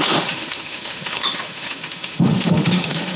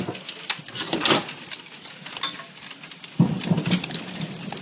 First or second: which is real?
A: second